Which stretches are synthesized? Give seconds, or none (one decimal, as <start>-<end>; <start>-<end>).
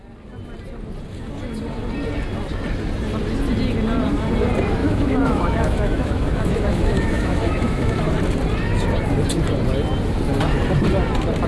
4.8-8.1